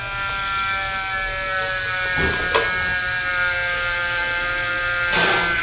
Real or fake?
real